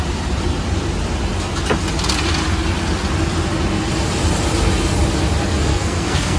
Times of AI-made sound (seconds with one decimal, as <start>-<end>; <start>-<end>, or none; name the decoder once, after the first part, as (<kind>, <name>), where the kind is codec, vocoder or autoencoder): 5.7-6.4 (codec, SNAC)